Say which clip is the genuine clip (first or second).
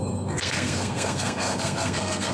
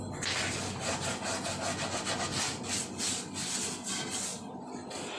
second